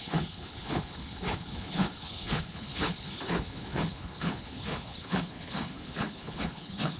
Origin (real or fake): fake